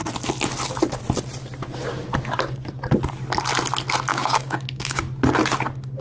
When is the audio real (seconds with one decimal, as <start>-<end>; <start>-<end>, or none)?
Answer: 0.0-4.1; 5.0-6.0